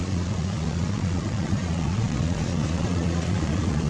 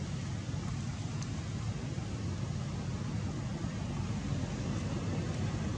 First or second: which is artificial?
first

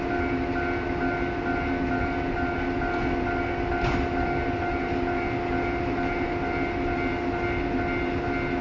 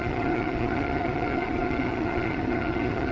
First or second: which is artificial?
second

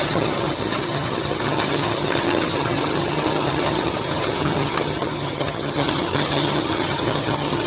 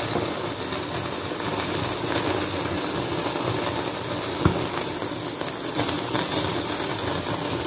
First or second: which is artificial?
first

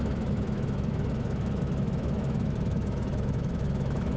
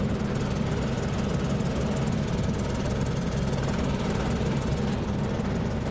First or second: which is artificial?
first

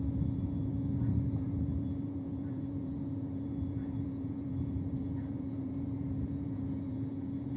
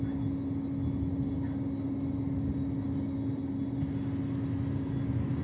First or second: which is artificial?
first